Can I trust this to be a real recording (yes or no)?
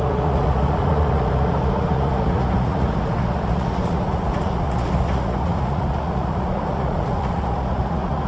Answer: no